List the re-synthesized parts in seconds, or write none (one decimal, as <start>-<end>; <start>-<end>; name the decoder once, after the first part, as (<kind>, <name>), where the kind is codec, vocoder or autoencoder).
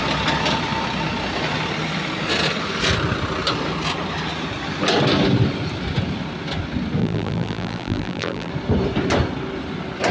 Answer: 7.0-8.5 (vocoder, BigVGAN v2)